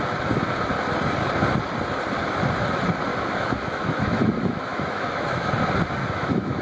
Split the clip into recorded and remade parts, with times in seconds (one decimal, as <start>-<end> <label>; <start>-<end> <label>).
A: 0.0-3.1 recorded; 3.1-5.5 remade; 5.5-6.0 recorded; 6.0-6.6 remade